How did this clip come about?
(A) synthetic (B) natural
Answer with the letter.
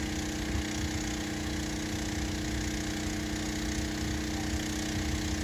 B